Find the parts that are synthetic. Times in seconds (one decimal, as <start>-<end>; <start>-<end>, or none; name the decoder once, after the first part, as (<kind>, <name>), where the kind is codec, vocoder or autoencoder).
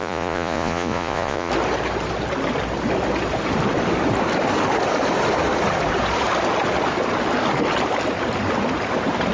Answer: 0.0-1.5 (vocoder, Vocos)